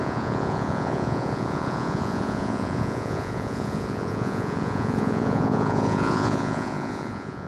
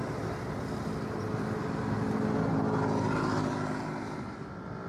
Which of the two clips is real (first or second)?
second